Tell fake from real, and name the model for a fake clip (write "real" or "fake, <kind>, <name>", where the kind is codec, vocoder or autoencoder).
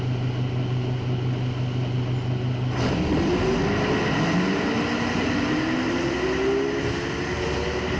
real